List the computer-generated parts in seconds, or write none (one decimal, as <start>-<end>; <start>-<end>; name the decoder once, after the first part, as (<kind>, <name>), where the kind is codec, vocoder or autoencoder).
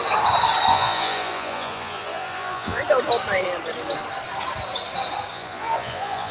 0.7-2.8 (vocoder, Vocos); 5.3-6.3